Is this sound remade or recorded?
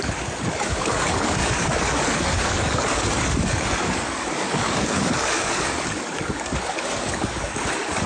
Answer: remade